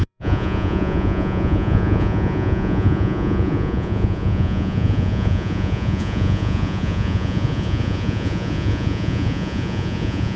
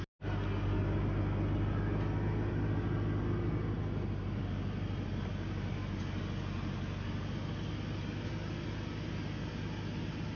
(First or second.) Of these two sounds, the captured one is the second